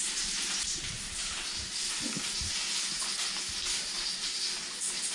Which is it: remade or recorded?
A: recorded